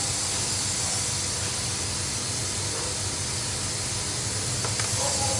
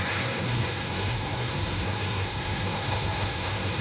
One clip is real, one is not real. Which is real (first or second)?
first